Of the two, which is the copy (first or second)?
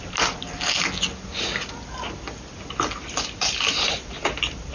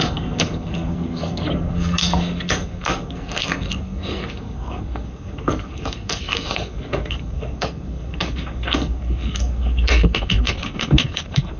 second